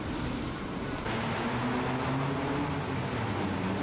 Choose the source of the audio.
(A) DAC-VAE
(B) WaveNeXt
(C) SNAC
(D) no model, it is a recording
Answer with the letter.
D